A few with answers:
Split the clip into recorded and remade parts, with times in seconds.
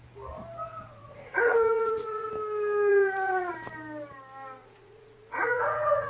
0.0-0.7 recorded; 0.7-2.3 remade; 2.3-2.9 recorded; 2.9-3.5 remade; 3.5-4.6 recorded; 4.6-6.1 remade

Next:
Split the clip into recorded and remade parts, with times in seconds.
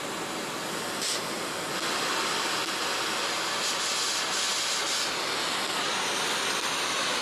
0.0-7.2 recorded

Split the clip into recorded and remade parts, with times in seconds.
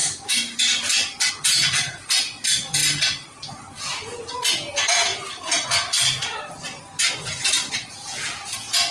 0.0-1.3 recorded; 1.3-2.8 remade; 2.8-4.5 recorded; 4.5-5.1 remade; 5.1-7.7 recorded; 7.7-8.9 remade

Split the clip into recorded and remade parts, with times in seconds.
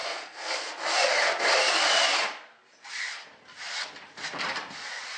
0.0-0.7 remade; 0.7-5.2 recorded